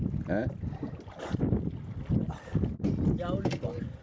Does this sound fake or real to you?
real